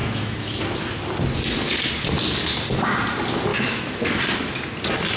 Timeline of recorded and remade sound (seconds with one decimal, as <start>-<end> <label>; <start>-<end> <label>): 0.0-0.6 remade; 0.6-3.5 recorded; 3.5-4.2 remade; 4.2-5.2 recorded